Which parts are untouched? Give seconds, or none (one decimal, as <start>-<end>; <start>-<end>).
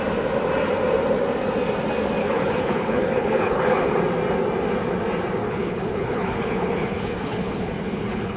0.0-2.2; 4.0-5.4